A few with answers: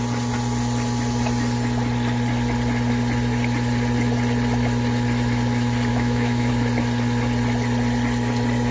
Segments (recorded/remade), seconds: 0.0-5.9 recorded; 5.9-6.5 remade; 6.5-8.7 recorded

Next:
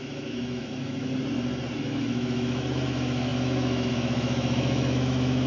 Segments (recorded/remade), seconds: 0.0-1.1 remade; 1.1-1.8 recorded; 1.8-5.5 remade

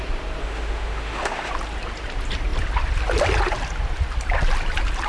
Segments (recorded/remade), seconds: 0.0-0.4 recorded; 0.4-1.5 remade; 1.5-5.1 recorded